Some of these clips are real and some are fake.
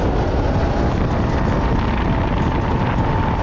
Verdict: real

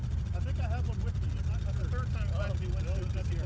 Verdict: real